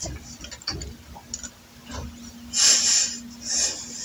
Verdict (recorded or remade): recorded